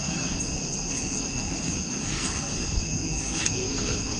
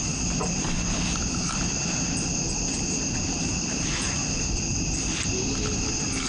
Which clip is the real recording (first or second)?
second